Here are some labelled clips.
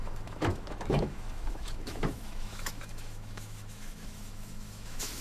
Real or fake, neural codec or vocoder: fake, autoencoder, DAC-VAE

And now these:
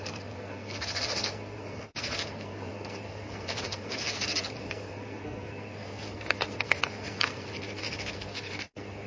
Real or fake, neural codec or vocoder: fake, codec, SNAC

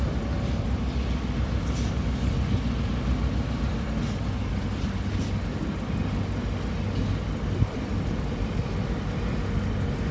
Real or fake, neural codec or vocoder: real